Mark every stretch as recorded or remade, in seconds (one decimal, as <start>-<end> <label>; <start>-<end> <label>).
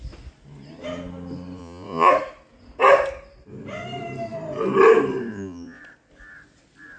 0.0-1.6 recorded; 1.6-2.1 remade; 2.1-5.3 recorded; 5.3-5.8 remade; 5.8-7.0 recorded